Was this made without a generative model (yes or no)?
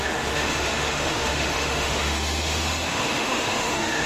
no